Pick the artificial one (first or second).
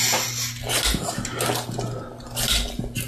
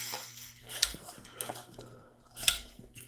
second